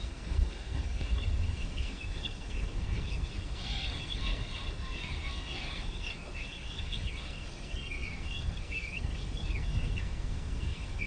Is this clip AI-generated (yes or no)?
yes